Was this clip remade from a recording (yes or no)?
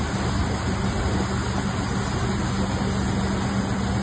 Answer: no